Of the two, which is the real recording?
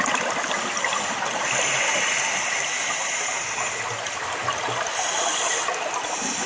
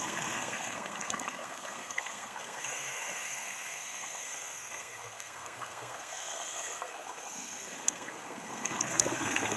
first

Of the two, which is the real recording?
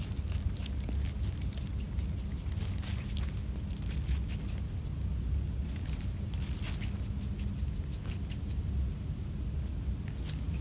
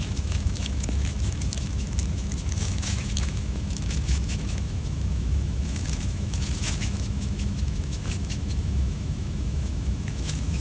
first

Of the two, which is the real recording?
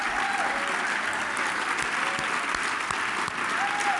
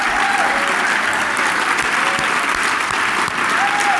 first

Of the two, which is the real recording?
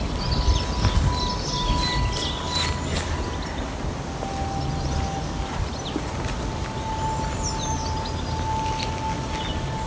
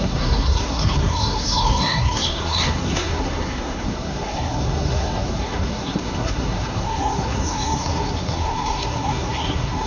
first